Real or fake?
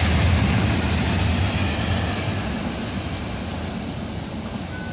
real